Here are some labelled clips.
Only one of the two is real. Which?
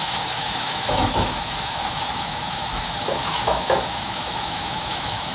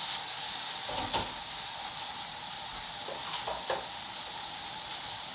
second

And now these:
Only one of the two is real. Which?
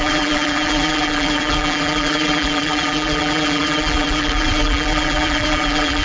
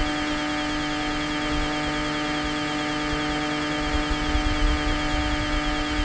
second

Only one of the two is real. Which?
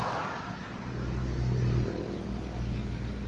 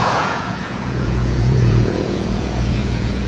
first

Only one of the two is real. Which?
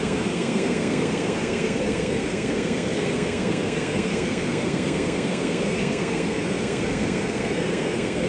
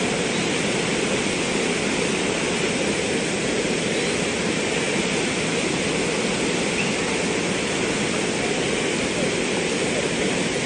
second